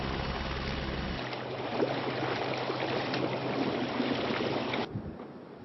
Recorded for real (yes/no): yes